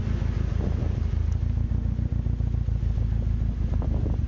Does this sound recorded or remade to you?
recorded